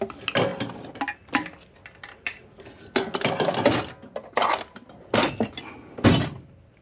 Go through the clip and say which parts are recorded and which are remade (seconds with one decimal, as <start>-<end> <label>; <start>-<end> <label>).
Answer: 0.0-6.8 recorded